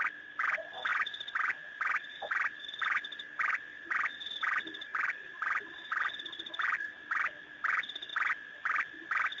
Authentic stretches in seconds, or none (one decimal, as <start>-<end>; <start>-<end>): 0.0-0.9; 2.2-9.4